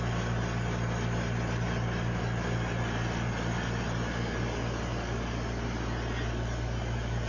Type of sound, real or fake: real